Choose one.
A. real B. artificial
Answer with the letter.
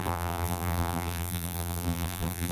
B